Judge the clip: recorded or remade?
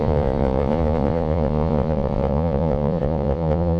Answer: remade